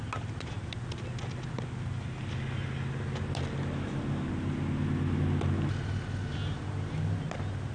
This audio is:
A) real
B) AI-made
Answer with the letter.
A